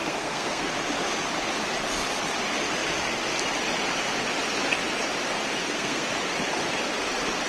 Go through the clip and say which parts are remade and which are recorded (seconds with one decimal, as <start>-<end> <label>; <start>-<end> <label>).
0.0-0.7 remade; 0.7-5.6 recorded; 5.6-6.1 remade; 6.1-7.5 recorded